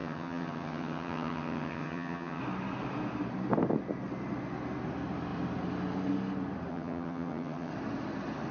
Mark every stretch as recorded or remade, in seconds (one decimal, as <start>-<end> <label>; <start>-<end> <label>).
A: 0.0-2.4 remade; 2.4-6.7 recorded; 6.7-7.7 remade; 7.7-8.5 recorded